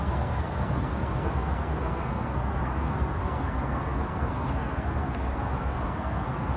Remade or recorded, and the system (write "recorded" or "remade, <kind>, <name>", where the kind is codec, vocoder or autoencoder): remade, codec, SNAC